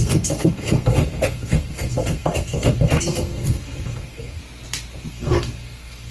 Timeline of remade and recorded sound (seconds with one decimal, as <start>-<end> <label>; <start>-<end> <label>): 0.0-4.4 remade; 4.4-5.1 recorded; 5.1-6.1 remade